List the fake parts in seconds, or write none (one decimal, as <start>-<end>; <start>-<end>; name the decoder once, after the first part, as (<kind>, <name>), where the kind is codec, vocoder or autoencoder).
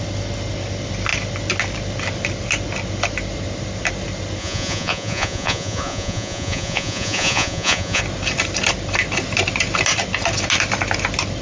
4.4-8.0 (vocoder, Vocos)